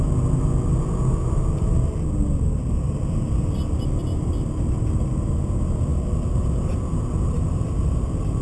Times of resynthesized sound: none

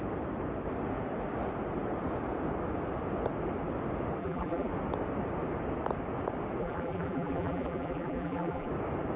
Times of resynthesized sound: 4.2-4.7 (vocoder, BigVGAN v2); 6.6-8.7

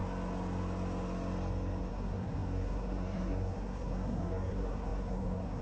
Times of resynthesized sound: 1.9-5.6 (codec, SNAC)

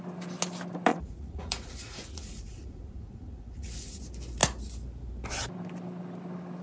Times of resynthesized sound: 0.9-4.0 (vocoder, Vocos)

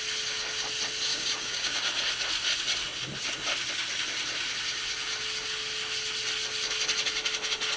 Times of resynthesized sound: 1.1-1.8 (codec, DAC)